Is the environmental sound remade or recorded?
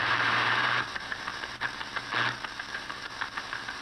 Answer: remade